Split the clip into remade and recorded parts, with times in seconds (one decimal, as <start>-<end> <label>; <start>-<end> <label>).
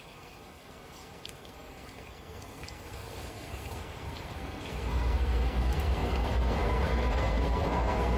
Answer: 0.0-8.2 remade